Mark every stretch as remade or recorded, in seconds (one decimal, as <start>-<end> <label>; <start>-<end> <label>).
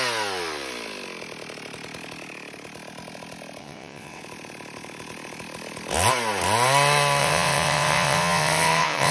0.0-3.6 recorded; 3.6-4.2 remade; 4.2-7.2 recorded; 7.2-9.1 remade